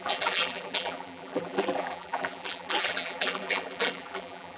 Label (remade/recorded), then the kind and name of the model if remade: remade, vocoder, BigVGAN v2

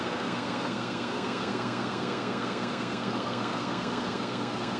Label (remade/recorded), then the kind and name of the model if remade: remade, codec, SNAC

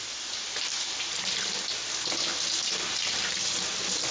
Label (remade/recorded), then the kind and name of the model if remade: recorded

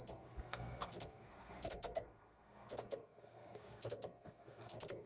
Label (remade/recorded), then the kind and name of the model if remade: remade, codec, SNAC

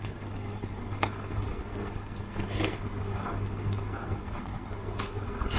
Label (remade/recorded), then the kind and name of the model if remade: remade, codec, SNAC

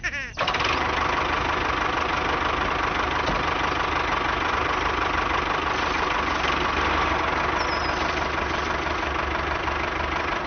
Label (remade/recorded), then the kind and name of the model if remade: recorded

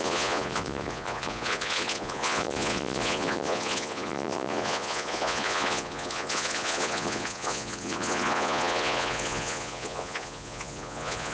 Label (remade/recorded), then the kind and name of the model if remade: remade, vocoder, Vocos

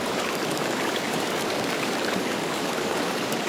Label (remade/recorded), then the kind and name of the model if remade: remade, codec, DAC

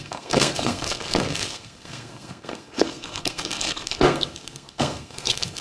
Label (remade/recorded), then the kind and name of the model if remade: remade, codec, SNAC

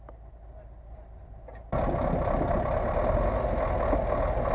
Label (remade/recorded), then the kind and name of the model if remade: recorded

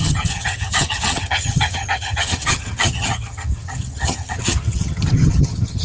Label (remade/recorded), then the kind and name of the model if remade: remade, vocoder, HiFi-GAN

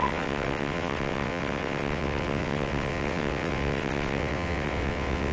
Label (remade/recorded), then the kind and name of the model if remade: remade, vocoder, WaveNeXt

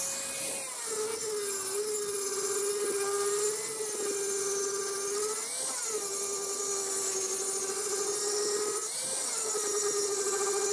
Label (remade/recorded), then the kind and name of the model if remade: recorded